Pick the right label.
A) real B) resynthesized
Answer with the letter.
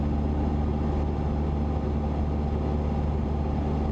A